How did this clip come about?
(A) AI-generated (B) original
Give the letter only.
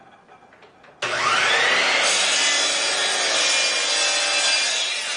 B